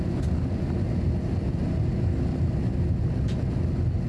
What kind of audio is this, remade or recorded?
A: recorded